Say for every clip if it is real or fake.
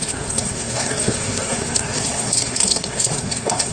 fake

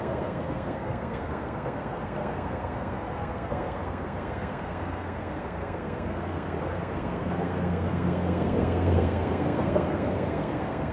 fake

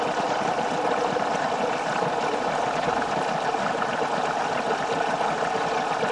real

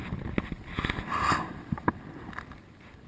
real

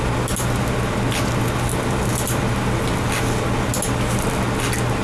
real